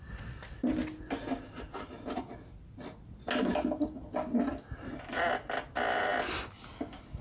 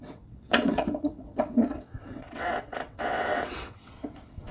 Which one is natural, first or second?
first